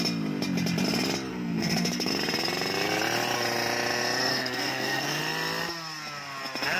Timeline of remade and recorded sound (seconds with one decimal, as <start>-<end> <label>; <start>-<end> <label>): 0.0-1.3 recorded; 1.3-2.1 remade; 2.1-4.3 recorded; 4.3-5.2 remade; 5.2-6.8 recorded